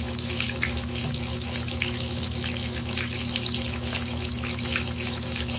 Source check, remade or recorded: remade